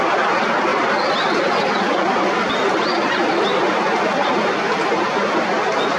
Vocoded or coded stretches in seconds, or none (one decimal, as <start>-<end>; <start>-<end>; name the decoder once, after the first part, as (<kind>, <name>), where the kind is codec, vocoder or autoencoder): none